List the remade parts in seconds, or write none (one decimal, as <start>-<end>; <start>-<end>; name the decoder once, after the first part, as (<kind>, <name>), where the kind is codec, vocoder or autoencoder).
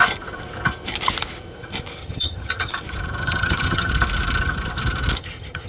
2.0-2.7 (vocoder, HiFi-GAN); 3.2-3.9; 5.2-5.7